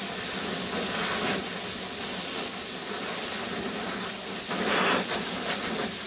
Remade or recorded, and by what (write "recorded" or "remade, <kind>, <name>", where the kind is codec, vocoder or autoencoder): recorded